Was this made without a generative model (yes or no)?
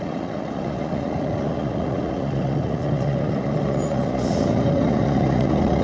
no